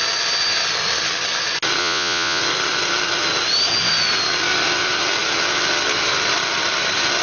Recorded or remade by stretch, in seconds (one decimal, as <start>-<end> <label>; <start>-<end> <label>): 0.0-1.8 recorded; 1.8-2.4 remade; 2.4-7.2 recorded